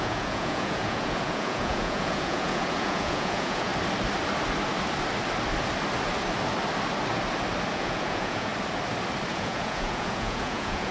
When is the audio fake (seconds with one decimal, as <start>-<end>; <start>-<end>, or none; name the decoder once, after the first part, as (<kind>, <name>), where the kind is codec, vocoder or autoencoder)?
0.0-3.7 (vocoder, Vocos); 7.7-8.5; 9.3-10.9